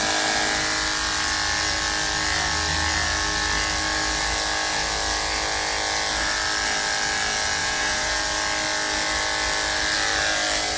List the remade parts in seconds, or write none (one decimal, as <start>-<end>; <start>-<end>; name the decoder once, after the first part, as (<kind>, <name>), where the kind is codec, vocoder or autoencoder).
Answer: 7.6-8.2 (vocoder, Vocos)